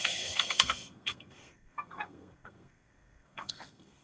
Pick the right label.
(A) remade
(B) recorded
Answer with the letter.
A